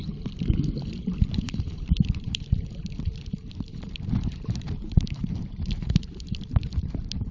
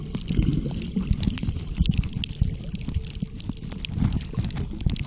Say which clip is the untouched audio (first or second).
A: second